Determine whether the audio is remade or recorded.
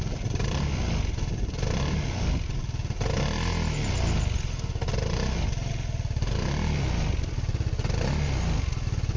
recorded